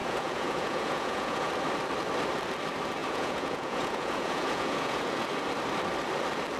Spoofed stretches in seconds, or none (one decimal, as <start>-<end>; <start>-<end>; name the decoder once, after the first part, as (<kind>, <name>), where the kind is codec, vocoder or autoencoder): 0.0-1.5 (vocoder, Vocos); 3.0-5.2